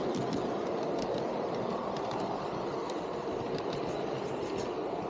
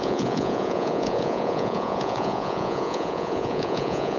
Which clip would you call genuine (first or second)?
first